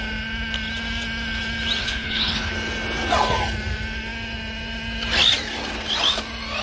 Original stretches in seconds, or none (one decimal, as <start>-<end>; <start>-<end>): 0.0-1.8; 2.5-6.6